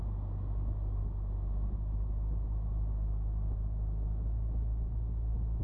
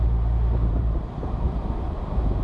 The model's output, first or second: second